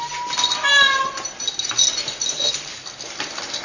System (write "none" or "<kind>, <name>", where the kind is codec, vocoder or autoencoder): none